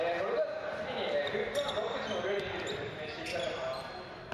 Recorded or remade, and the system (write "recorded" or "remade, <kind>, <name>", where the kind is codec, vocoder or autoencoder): recorded